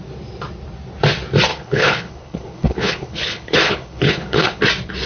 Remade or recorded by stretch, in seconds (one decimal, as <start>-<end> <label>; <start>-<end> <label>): 0.0-1.5 recorded; 1.5-4.6 remade; 4.6-5.1 recorded